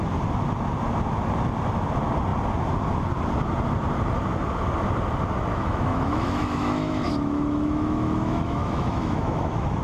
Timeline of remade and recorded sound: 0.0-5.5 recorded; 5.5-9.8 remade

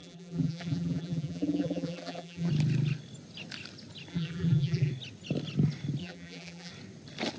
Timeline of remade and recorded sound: 0.0-2.5 remade; 2.5-4.1 recorded; 4.1-4.9 remade; 4.9-6.0 recorded; 6.0-6.7 remade; 6.7-7.4 recorded

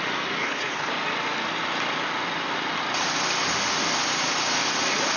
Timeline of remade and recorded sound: 0.0-0.4 recorded; 0.4-0.9 remade; 0.9-5.2 recorded

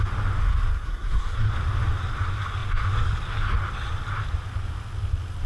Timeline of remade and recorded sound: 0.0-0.7 recorded; 0.7-1.5 remade; 1.5-5.5 recorded